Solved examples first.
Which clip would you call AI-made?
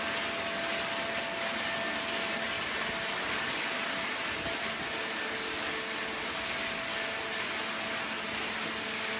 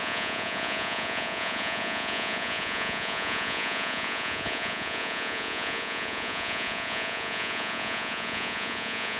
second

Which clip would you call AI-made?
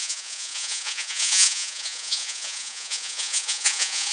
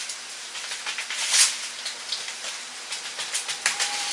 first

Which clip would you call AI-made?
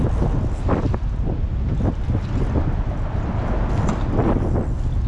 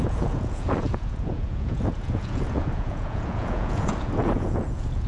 second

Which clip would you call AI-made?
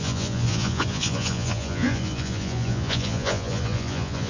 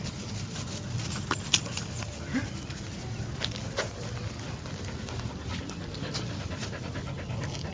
first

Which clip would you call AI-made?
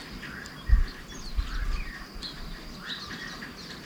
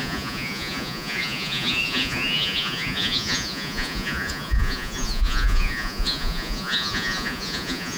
second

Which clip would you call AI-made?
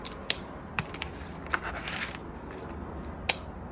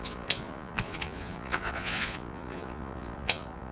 second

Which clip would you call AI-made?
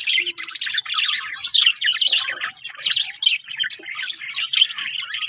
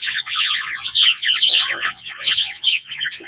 second